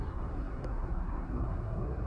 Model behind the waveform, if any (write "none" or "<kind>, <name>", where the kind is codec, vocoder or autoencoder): codec, SNAC